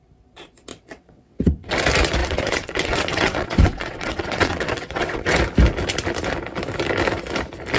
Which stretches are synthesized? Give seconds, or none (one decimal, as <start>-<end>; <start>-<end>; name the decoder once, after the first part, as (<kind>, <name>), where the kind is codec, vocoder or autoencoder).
0.7-1.7 (vocoder, WaveNeXt); 2.2-5.4